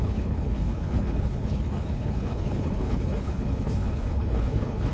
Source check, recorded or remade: remade